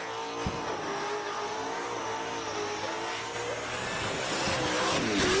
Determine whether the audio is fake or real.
real